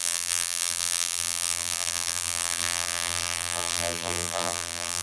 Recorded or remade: remade